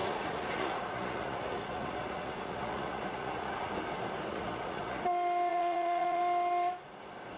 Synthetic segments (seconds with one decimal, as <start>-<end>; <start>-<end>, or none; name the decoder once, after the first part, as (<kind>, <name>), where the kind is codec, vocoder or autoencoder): 0.0-3.7 (vocoder, Vocos); 4.3-5.0; 5.5-6.2